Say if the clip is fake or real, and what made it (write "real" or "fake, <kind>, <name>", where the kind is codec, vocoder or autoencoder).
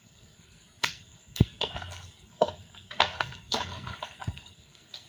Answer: fake, codec, SNAC